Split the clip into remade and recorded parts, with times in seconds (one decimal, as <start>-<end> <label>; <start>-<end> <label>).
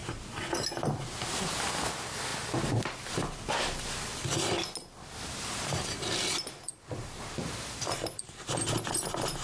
0.0-0.9 recorded; 0.9-4.1 remade; 4.1-5.3 recorded; 5.3-9.4 remade